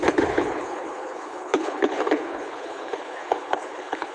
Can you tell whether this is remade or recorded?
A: remade